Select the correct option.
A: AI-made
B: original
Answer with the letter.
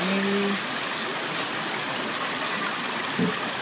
B